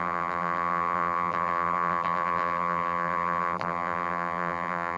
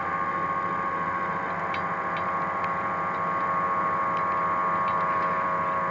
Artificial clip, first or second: first